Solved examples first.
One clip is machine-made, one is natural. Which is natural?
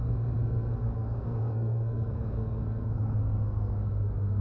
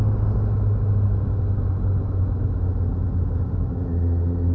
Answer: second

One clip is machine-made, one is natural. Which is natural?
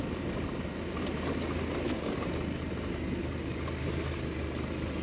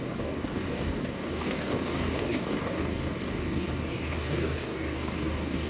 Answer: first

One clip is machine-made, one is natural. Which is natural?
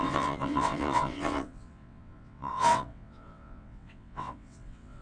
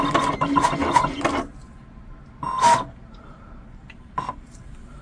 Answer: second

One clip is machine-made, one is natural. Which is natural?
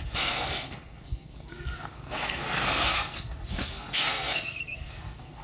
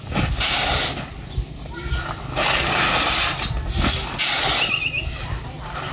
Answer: second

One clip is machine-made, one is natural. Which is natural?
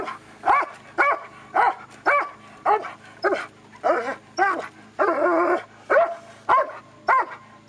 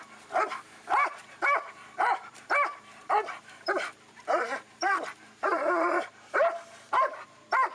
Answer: first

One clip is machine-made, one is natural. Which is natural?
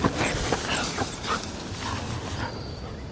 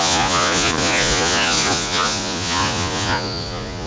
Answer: first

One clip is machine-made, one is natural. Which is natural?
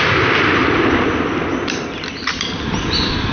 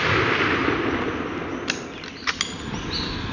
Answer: second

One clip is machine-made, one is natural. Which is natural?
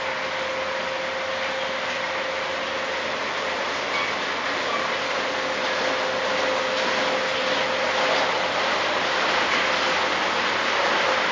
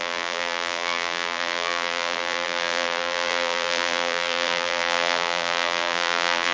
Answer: first